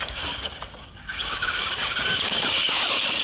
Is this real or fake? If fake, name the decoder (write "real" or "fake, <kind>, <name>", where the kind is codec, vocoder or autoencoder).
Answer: fake, codec, DAC